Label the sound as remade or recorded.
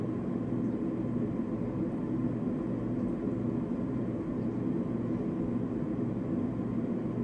recorded